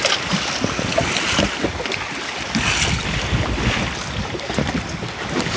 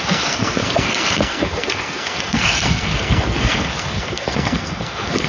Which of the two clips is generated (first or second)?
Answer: second